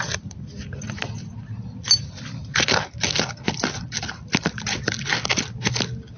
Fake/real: real